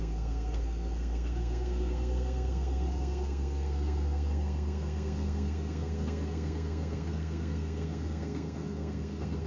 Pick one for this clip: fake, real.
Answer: fake